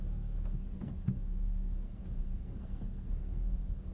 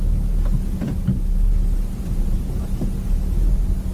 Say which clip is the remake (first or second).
first